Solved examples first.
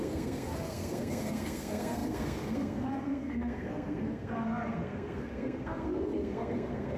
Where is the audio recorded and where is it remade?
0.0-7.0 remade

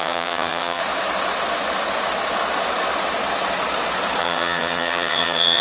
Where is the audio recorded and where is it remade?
0.0-0.8 remade; 0.8-4.2 recorded; 4.2-5.6 remade

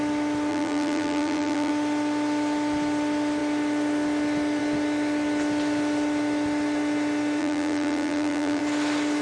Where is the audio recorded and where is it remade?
0.0-0.5 recorded; 0.5-1.7 remade; 1.7-7.4 recorded; 7.4-8.6 remade; 8.6-9.2 recorded

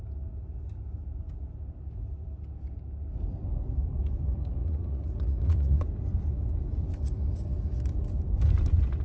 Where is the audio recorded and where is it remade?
0.0-4.6 recorded; 4.6-5.8 remade; 5.8-9.0 recorded

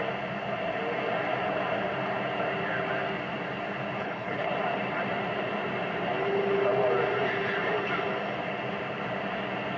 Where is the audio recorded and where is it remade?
0.0-4.0 recorded; 4.0-4.5 remade; 4.5-9.8 recorded

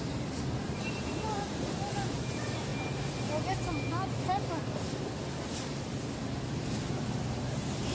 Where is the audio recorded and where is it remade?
0.0-2.7 remade; 2.7-7.4 recorded; 7.4-7.9 remade

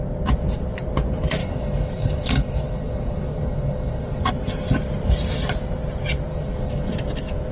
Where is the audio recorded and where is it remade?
0.0-1.4 recorded; 1.4-4.3 remade; 4.3-6.3 recorded; 6.3-6.9 remade; 6.9-7.5 recorded

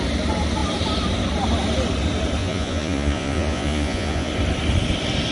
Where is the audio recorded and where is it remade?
0.0-2.4 recorded; 2.4-4.3 remade; 4.3-5.3 recorded